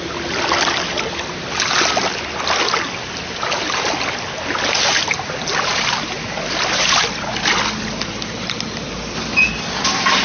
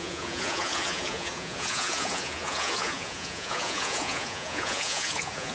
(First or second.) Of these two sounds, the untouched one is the first